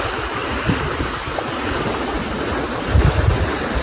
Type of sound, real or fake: real